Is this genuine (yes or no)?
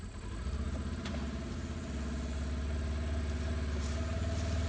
yes